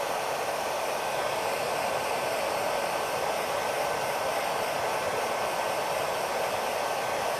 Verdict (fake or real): real